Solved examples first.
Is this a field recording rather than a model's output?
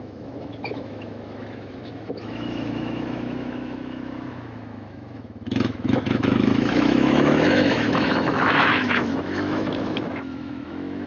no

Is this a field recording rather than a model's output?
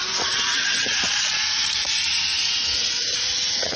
no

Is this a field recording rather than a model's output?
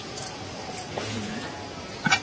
no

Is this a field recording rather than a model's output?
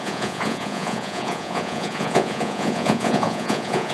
no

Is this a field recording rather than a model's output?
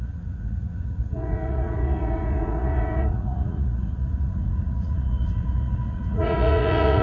no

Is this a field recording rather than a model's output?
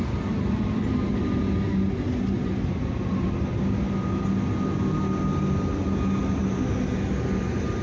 yes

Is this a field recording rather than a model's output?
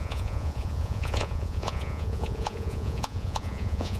no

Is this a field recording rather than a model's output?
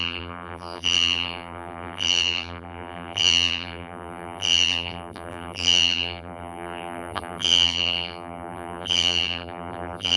no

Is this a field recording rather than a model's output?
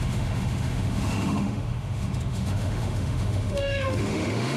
no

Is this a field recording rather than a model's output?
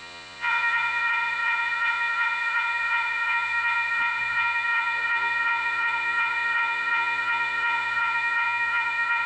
no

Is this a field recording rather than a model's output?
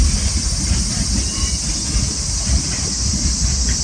yes